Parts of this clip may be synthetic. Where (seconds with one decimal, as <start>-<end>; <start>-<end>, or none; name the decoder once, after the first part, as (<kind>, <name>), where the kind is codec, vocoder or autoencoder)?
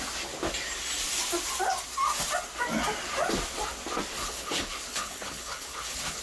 4.2-6.2 (codec, HILCodec)